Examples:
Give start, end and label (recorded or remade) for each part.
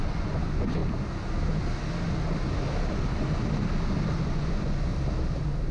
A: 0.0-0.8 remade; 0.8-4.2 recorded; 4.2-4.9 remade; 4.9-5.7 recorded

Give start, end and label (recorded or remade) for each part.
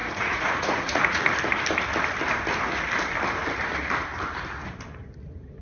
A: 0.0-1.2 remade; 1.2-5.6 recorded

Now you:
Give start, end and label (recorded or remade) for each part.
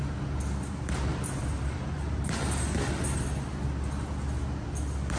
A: 0.0-1.1 recorded; 1.1-2.3 remade; 2.3-5.2 recorded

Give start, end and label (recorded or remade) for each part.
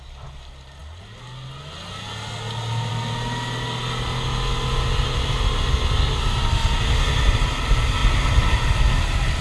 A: 0.0-9.4 recorded